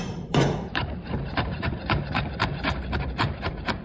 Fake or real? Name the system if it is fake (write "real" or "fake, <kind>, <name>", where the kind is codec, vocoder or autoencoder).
fake, vocoder, BigVGAN v2